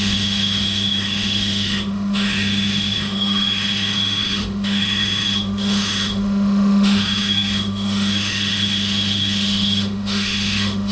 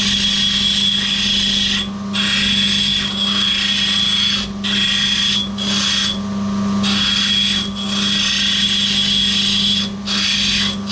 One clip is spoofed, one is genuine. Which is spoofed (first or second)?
first